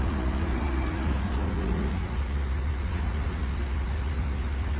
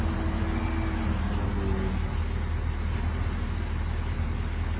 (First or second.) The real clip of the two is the second